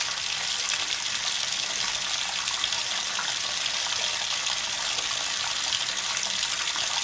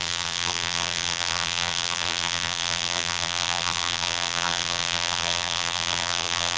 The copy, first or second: second